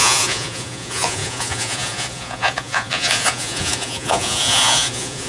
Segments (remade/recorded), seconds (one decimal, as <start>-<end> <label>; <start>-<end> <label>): 0.0-5.3 remade